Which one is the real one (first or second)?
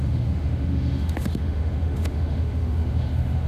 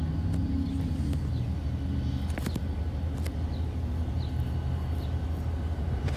second